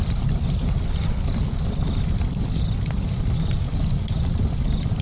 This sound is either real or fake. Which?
real